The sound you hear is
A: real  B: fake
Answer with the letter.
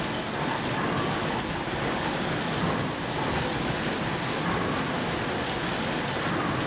A